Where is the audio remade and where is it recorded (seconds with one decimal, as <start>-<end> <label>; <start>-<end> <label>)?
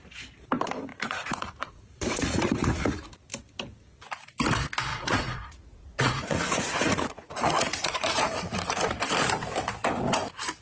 0.0-0.9 recorded; 0.9-3.0 remade; 3.0-4.9 recorded; 4.9-8.8 remade; 8.8-10.6 recorded